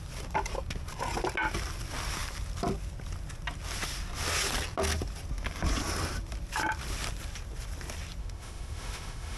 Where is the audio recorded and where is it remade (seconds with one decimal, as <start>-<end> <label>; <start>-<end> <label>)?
0.0-8.2 recorded; 8.2-9.4 remade